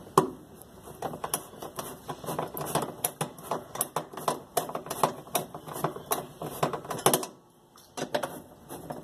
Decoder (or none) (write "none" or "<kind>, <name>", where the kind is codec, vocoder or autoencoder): none